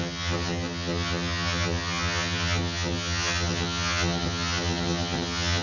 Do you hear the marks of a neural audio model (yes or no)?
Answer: yes